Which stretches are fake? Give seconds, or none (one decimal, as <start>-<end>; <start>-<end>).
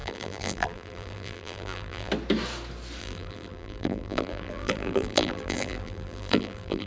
0.0-2.1; 3.0-6.9